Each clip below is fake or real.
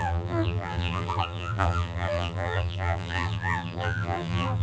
fake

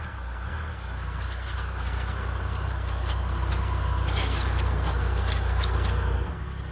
fake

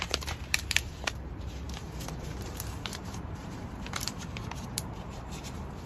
fake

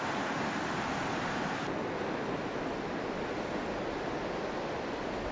real